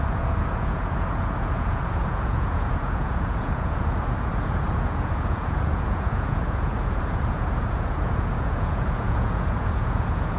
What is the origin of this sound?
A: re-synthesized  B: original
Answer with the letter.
A